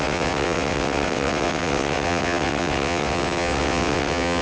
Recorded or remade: remade